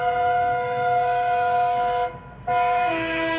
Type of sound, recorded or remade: remade